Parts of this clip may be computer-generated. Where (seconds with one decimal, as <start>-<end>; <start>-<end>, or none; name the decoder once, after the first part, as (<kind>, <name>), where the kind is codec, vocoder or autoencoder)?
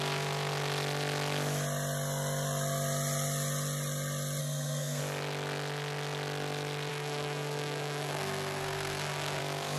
4.4-5.0 (codec, SNAC); 6.9-9.4